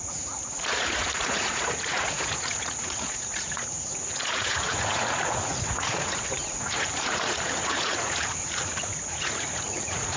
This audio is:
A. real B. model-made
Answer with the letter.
B